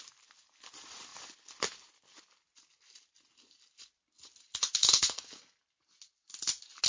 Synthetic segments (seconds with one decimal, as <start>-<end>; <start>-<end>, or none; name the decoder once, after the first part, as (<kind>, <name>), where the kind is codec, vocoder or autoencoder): 4.8-5.4 (codec, SNAC)